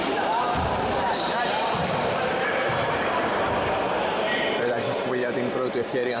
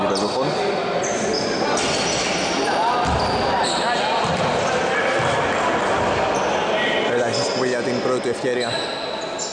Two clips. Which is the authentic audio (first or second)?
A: second